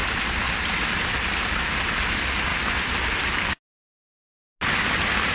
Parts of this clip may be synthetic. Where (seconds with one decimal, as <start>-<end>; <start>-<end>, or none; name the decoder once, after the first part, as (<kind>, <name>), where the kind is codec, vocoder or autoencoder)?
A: none